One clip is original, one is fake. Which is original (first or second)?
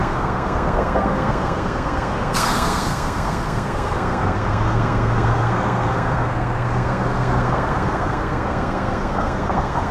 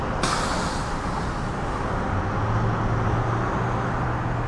second